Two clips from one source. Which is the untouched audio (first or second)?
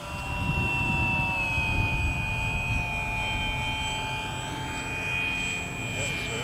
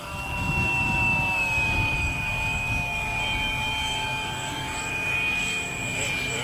first